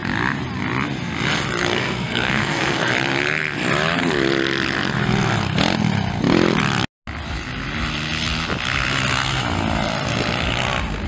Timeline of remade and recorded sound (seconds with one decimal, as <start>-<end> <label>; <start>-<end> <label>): 0.0-1.6 recorded; 1.6-2.9 remade; 2.9-11.1 recorded